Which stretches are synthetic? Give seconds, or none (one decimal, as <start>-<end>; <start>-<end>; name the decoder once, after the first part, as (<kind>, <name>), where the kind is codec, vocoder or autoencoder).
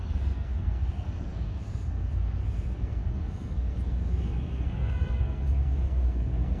0.0-6.6 (codec, SNAC)